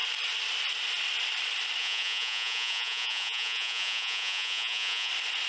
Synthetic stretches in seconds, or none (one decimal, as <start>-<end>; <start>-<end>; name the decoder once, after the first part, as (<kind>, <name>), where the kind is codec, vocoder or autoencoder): 1.8-5.1 (vocoder, Vocos)